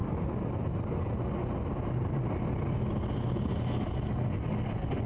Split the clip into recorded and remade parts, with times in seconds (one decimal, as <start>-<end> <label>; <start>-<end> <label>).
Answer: 0.0-5.1 recorded